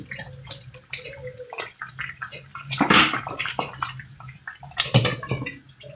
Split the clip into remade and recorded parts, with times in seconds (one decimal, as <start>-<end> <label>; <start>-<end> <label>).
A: 0.0-2.5 recorded; 2.5-4.7 remade; 4.7-6.0 recorded